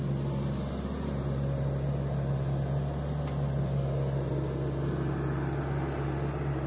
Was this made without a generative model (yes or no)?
yes